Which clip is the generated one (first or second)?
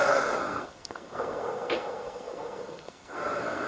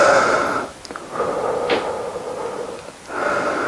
first